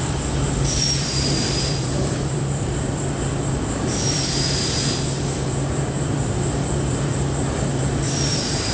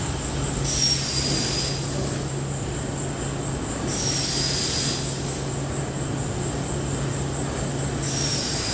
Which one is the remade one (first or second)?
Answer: first